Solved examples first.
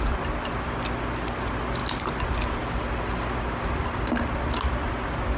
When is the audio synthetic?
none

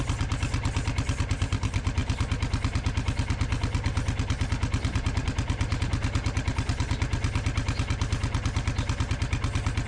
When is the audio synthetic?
none